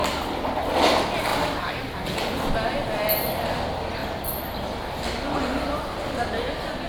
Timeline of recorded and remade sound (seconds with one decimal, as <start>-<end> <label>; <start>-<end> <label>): 0.0-0.7 remade; 0.7-1.3 recorded; 1.3-2.5 remade; 2.5-4.0 recorded; 4.0-5.0 remade; 5.0-6.9 recorded